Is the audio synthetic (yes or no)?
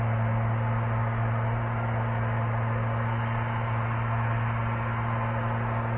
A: no